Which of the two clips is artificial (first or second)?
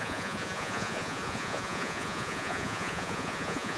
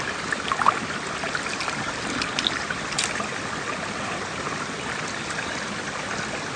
first